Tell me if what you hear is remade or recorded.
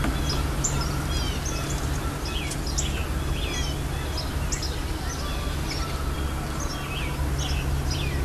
recorded